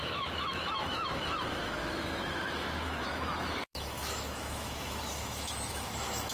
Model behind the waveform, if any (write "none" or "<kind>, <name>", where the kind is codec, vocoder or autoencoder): autoencoder, DAC-VAE